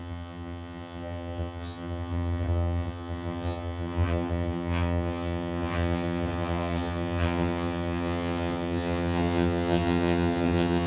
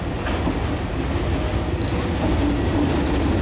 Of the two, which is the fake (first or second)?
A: first